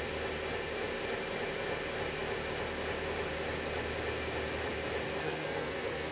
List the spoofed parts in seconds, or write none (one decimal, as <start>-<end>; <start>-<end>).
5.2-6.1